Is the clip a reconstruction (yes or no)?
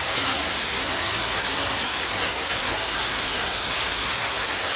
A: yes